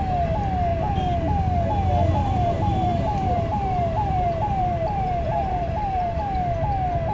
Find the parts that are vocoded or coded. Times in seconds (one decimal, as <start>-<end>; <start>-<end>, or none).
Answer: 2.2-6.2